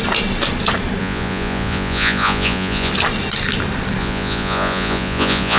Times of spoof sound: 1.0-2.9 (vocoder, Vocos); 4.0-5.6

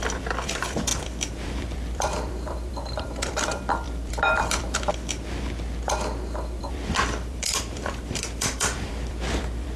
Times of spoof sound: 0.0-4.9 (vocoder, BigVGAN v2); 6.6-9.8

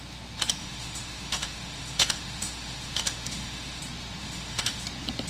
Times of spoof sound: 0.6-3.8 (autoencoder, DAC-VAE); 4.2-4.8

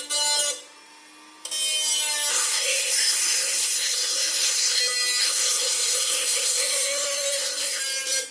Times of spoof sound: 2.3-4.8 (codec, SNAC); 5.2-7.8

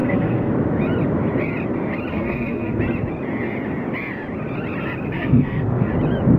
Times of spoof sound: 0.0-0.5 (codec, SNAC); 2.1-2.8; 5.1-5.9